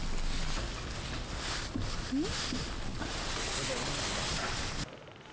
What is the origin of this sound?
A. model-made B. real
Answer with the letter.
B